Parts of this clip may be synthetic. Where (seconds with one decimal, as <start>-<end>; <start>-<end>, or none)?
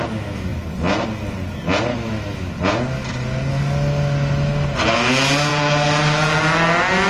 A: 1.9-2.5